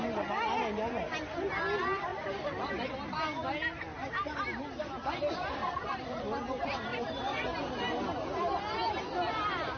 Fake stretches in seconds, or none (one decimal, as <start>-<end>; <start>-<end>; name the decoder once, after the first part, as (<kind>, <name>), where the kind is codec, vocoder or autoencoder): 5.6-6.2 (vocoder, BigVGAN v2); 6.9-7.7